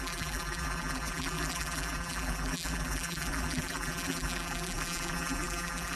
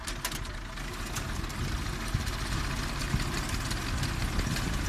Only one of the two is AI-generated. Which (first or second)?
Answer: first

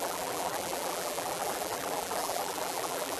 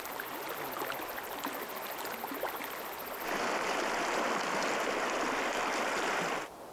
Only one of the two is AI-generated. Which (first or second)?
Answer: first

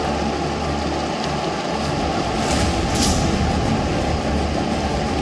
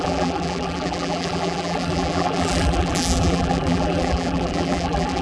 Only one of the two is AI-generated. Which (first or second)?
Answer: second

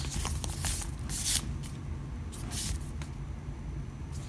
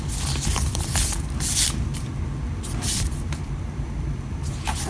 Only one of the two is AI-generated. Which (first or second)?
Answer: second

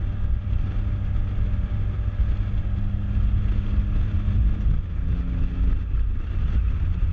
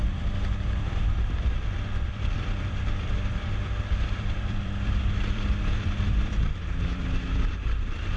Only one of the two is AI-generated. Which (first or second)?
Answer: second